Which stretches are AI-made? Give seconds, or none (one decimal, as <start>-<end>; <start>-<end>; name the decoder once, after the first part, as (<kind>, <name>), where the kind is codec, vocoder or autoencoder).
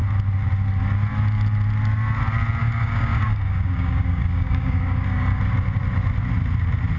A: 2.6-5.4 (codec, DAC)